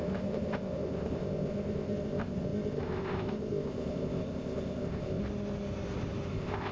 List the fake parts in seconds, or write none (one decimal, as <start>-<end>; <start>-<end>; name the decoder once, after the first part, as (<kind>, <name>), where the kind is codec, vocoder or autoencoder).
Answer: 0.0-5.2 (codec, ZipCodec); 6.3-6.7